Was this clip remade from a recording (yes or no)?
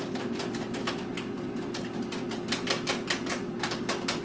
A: no